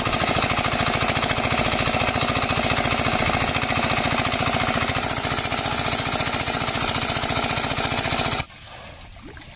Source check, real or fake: real